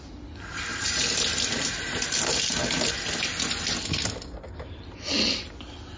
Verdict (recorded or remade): recorded